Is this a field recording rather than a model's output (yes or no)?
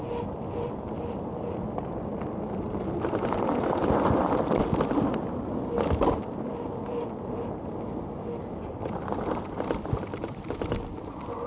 yes